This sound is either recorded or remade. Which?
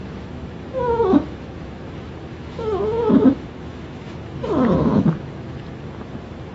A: remade